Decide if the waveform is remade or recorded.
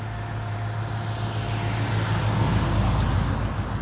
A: recorded